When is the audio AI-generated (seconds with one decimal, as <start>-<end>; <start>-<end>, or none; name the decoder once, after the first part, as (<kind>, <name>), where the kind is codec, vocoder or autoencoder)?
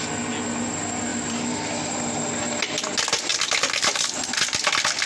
1.1-1.9 (vocoder, BigVGAN v2)